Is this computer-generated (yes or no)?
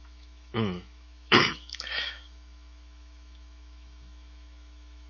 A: yes